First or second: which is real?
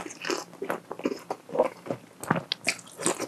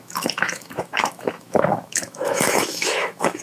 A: first